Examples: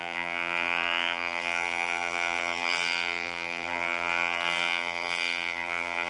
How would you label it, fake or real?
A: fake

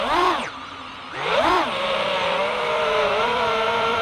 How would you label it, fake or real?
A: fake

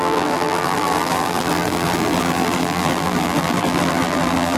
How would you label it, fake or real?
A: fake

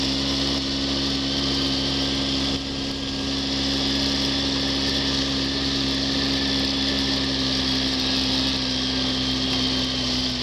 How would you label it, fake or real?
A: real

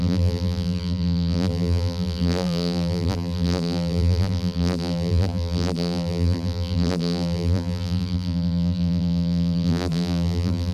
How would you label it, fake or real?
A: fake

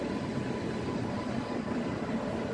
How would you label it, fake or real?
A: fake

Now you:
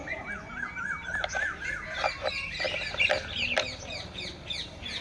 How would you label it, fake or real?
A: real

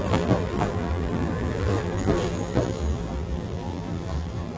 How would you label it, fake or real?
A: fake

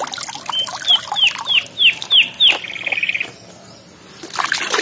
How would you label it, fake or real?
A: real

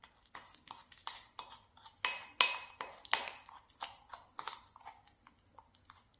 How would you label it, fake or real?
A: real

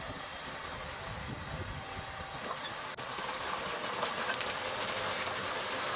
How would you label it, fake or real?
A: real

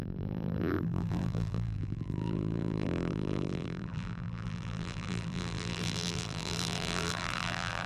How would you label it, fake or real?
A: fake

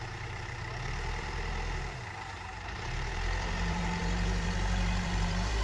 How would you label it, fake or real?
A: fake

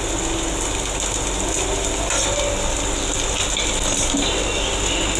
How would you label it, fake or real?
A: real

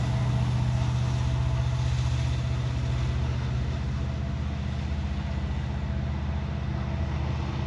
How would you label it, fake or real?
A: real